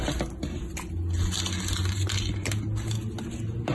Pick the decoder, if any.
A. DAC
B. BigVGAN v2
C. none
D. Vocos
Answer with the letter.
C